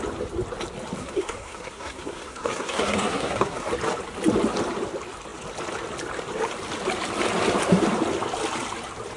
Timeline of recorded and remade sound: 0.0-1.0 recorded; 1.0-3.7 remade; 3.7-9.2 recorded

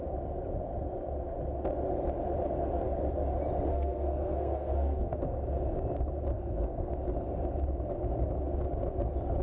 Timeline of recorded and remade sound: 0.0-3.7 recorded; 3.7-5.2 remade; 5.2-6.3 recorded; 6.3-6.9 remade; 6.9-9.4 recorded

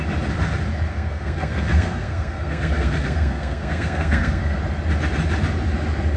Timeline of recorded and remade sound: 0.0-0.9 recorded; 0.9-4.6 remade; 4.6-6.2 recorded

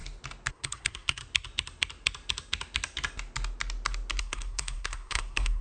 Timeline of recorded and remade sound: 0.0-0.5 recorded; 0.5-1.2 remade; 1.2-4.2 recorded; 4.2-5.6 remade

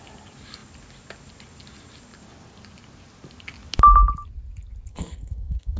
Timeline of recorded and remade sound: 0.0-4.9 recorded; 4.9-5.8 remade

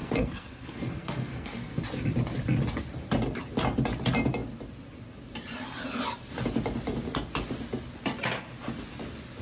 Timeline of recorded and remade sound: 0.0-1.8 remade; 1.8-9.4 recorded

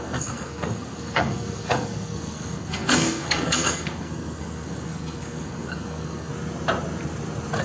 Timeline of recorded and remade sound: 0.0-6.3 remade; 6.3-7.6 recorded

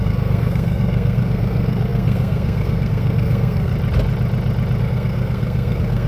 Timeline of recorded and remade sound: 0.0-3.7 remade; 3.7-4.8 recorded; 4.8-6.1 remade